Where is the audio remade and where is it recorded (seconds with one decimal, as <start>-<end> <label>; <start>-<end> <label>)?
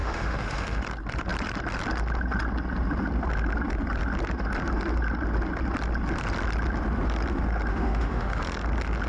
0.0-0.8 remade; 0.8-7.7 recorded; 7.7-8.4 remade; 8.4-9.1 recorded